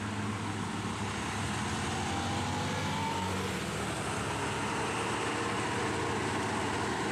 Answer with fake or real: real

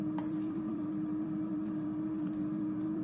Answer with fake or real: fake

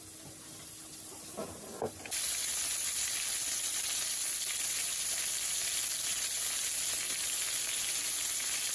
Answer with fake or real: real